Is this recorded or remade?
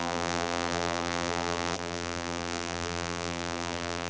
remade